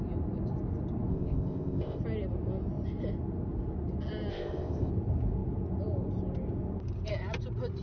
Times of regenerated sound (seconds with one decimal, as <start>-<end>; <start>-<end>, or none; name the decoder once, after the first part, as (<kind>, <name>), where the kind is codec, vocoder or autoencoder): 1.1-2.0 (codec, ZipCodec); 4.3-4.9